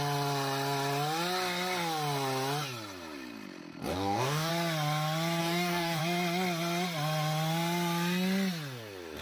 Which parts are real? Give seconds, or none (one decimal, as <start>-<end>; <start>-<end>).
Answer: 0.0-3.9; 4.5-5.4; 6.0-9.2